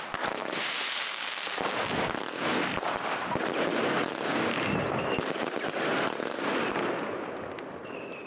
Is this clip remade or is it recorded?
recorded